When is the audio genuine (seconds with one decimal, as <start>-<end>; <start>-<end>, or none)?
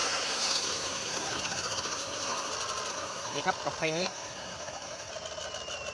2.5-2.9; 3.4-3.8; 5.1-5.9